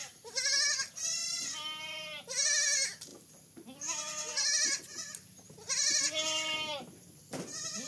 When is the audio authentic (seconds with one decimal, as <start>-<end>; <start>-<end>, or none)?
0.0-0.5; 1.2-2.2; 3.1-7.9